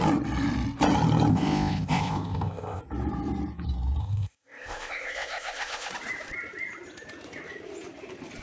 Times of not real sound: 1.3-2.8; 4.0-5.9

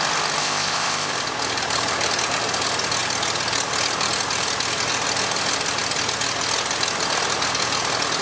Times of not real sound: 0.4-1.1

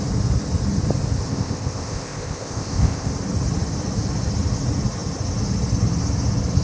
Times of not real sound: 1.3-3.1

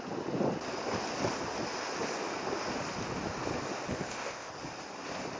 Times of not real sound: 3.9-4.5

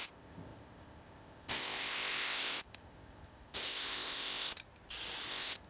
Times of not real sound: 0.0-4.6; 5.3-5.7

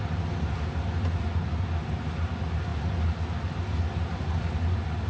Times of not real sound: none

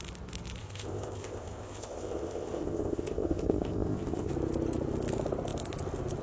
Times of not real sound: 0.6-4.3

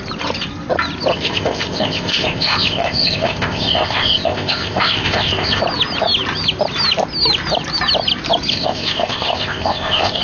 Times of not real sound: 1.1-5.6; 8.5-10.2